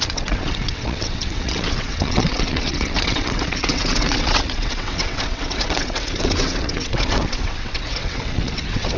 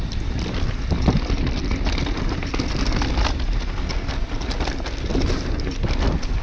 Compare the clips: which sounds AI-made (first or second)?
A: first